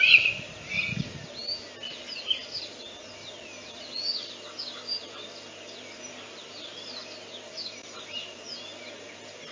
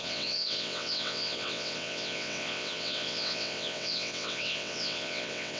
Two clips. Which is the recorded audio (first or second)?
first